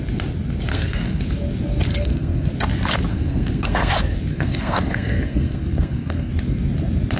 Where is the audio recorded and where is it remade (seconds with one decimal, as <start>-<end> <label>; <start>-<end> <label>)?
0.0-0.7 recorded; 0.7-1.2 remade; 1.2-1.9 recorded; 1.9-2.5 remade; 2.5-3.1 recorded; 3.1-3.9 remade; 3.9-4.3 recorded; 4.3-6.3 remade; 6.3-7.2 recorded